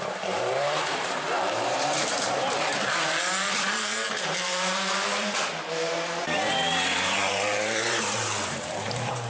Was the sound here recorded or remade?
remade